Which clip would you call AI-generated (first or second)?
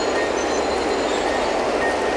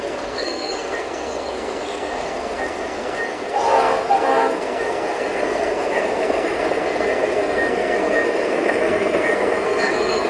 second